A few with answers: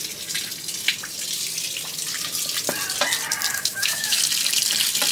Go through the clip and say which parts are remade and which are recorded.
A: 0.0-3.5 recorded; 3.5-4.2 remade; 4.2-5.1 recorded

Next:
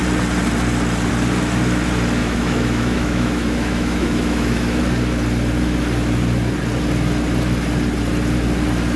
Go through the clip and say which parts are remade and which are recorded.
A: 0.0-2.2 recorded; 2.2-4.8 remade; 4.8-9.0 recorded

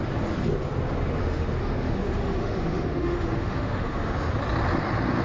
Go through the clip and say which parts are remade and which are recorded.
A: 0.0-1.2 recorded; 1.2-4.3 remade; 4.3-5.2 recorded

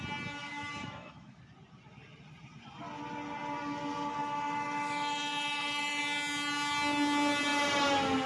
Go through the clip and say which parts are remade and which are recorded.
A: 0.0-0.4 recorded; 0.4-1.4 remade; 1.4-4.2 recorded; 4.2-6.0 remade; 6.0-8.3 recorded

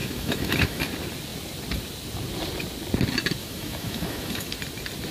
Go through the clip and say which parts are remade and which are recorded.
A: 0.0-0.8 remade; 0.8-3.4 recorded; 3.4-4.5 remade; 4.5-5.1 recorded

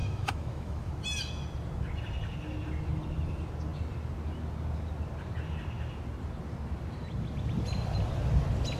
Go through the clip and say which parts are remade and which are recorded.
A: 0.0-0.9 remade; 0.9-8.8 recorded

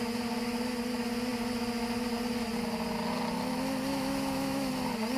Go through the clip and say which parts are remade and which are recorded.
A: 0.0-3.9 recorded; 3.9-4.7 remade; 4.7-5.2 recorded

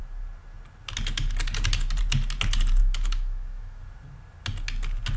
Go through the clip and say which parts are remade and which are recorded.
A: 0.0-2.8 recorded; 2.8-3.8 remade; 3.8-5.2 recorded